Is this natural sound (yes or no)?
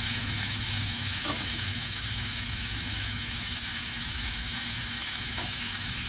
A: no